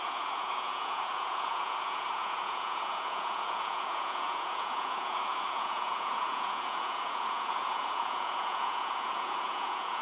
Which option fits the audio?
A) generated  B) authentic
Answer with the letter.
A